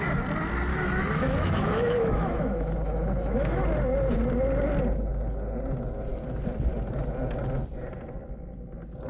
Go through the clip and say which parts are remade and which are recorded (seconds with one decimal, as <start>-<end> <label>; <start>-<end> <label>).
0.0-0.7 recorded; 0.7-3.6 remade; 3.6-9.1 recorded